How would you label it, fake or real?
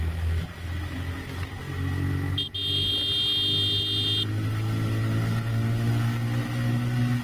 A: real